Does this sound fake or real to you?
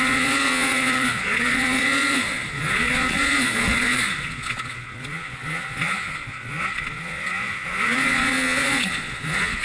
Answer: fake